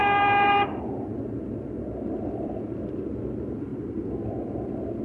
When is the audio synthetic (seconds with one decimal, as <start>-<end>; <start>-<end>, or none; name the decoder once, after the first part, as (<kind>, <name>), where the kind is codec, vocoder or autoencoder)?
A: 0.0-3.0 (vocoder, BigVGAN v2); 3.7-5.0